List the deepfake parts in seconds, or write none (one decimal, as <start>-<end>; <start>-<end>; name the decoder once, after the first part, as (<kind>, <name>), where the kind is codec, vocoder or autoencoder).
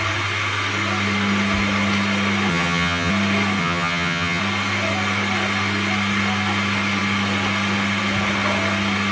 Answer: 2.5-3.1 (vocoder, HiFi-GAN); 3.6-4.4